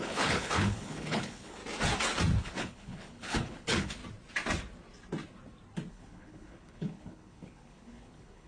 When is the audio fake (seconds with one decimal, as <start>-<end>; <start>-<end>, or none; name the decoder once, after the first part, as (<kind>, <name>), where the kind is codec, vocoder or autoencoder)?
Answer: 0.0-1.6 (codec, HILCodec); 2.4-4.0; 5.9-8.5